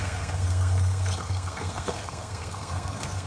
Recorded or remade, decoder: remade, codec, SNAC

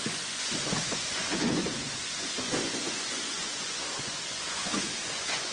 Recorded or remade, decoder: remade, vocoder, Vocos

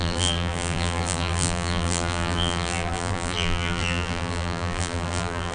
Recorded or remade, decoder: remade, vocoder, BigVGAN v2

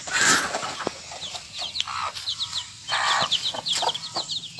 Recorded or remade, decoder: recorded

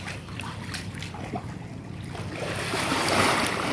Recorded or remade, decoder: recorded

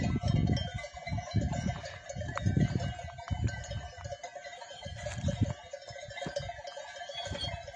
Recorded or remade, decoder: recorded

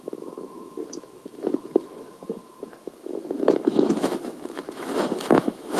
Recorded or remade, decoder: remade, autoencoder, DAC-VAE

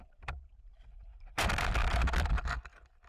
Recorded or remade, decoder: remade, vocoder, BigVGAN v2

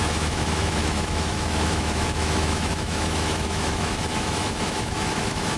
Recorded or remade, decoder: remade, autoencoder, DAC-VAE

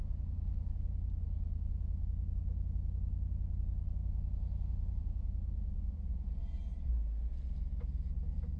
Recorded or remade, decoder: recorded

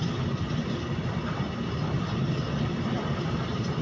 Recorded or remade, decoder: recorded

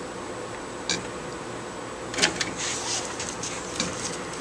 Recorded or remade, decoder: recorded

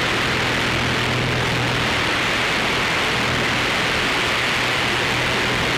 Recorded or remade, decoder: recorded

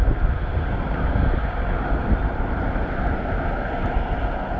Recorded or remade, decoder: recorded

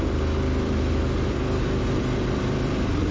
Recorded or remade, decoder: remade, vocoder, BigVGAN v2